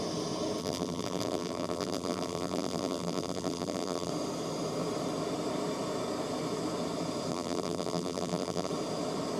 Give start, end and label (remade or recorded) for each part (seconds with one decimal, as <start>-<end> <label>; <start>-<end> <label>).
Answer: 0.0-0.6 recorded; 0.6-4.1 remade; 4.1-7.3 recorded; 7.3-8.7 remade; 8.7-9.4 recorded